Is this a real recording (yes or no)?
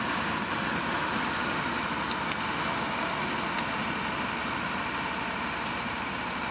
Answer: yes